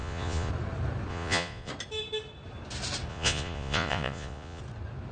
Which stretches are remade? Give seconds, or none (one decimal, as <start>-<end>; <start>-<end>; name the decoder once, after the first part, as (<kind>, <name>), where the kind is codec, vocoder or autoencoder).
0.0-0.5 (vocoder, Vocos); 1.1-1.7; 3.1-4.6

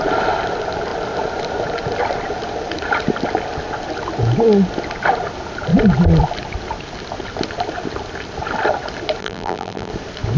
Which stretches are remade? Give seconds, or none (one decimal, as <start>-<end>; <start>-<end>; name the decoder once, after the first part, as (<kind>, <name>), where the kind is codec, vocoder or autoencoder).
9.2-9.9 (vocoder, BigVGAN v2)